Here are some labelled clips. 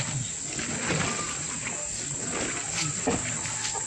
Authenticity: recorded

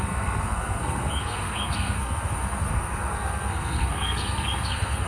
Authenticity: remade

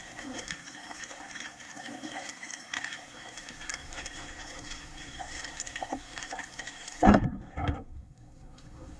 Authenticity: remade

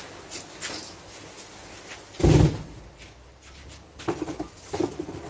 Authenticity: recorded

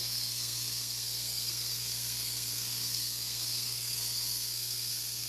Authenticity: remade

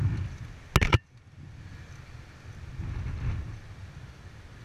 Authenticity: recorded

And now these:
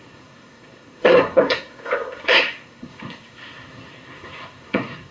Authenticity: remade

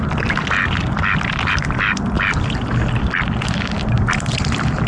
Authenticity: recorded